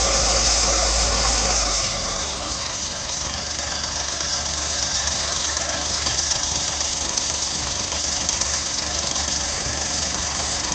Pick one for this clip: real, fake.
fake